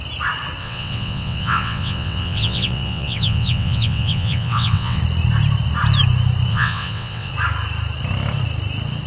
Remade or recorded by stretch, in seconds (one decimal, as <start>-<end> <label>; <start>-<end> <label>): 0.0-0.6 recorded; 0.6-5.0 remade; 5.0-6.5 recorded; 6.5-7.3 remade; 7.3-9.1 recorded